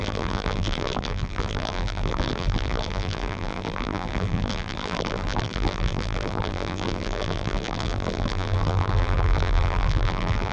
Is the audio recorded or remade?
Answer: remade